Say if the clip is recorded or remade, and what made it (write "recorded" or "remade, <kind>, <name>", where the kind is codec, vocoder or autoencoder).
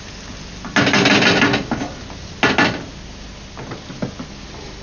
recorded